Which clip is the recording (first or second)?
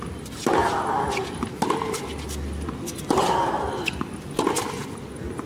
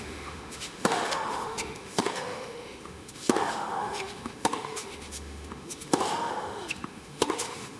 first